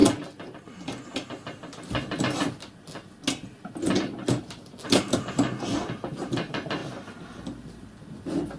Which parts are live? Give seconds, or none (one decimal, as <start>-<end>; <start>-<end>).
0.0-8.6